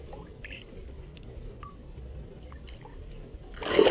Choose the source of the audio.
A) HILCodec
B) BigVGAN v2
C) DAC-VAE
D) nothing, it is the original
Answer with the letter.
B